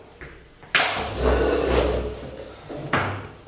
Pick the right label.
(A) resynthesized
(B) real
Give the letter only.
B